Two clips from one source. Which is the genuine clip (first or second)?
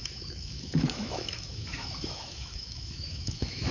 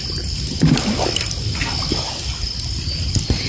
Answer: second